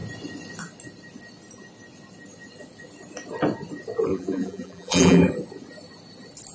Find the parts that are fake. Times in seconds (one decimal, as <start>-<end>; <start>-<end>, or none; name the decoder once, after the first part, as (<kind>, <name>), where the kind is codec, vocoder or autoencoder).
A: 4.1-5.3 (vocoder, BigVGAN v2)